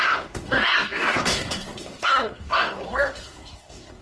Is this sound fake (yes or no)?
yes